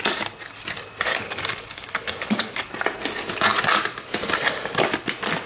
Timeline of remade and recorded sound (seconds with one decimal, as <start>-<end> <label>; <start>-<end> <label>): 0.0-1.1 recorded; 1.1-2.7 remade; 2.7-5.5 recorded